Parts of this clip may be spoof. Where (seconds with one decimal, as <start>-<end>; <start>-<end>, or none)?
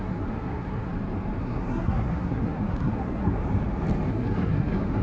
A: 0.0-0.9; 1.4-3.4; 4.1-5.0